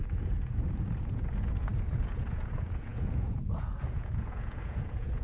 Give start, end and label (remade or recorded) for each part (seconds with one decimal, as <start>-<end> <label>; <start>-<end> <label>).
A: 0.0-5.2 remade